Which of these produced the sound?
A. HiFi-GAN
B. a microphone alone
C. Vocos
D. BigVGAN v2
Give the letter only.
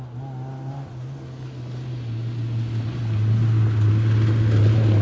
B